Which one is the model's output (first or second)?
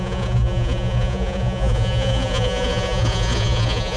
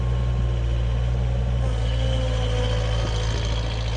first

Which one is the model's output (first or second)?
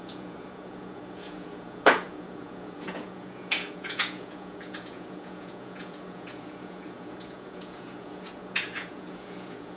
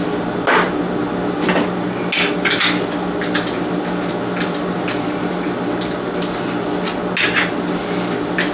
first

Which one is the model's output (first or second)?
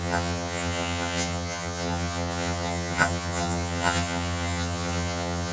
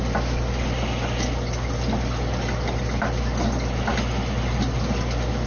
first